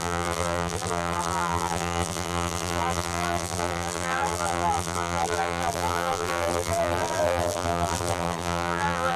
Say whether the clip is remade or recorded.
remade